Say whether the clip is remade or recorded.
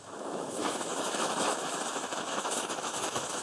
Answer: remade